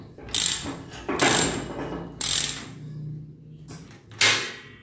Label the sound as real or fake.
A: real